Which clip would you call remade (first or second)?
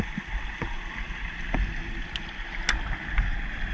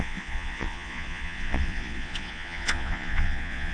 second